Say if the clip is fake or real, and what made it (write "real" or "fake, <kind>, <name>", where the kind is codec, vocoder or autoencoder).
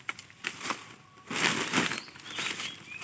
real